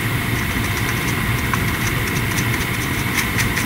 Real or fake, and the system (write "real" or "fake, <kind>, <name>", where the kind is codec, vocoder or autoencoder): fake, vocoder, BigVGAN v2